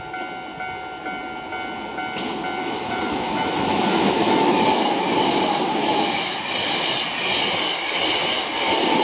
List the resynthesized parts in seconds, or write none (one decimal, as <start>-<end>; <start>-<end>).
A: 2.6-4.6; 5.8-6.4